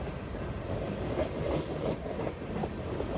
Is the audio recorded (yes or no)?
yes